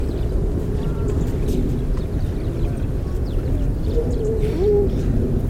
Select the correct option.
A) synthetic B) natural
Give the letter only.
B